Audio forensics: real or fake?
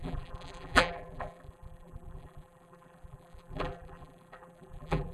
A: fake